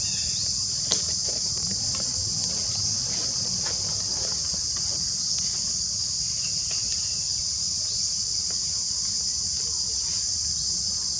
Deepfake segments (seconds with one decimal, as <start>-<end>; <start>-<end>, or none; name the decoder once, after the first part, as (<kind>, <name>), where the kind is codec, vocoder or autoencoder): none